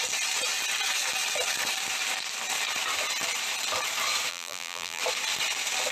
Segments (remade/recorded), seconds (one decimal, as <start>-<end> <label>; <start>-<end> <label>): 0.0-4.3 recorded; 4.3-5.0 remade; 5.0-5.9 recorded